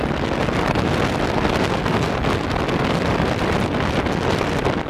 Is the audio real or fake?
real